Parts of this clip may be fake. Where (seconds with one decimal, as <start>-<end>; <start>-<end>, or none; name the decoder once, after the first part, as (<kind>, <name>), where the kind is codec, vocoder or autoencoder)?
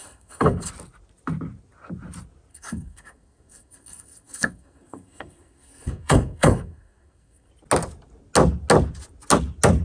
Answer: 0.0-0.7 (codec, SNAC); 2.5-7.5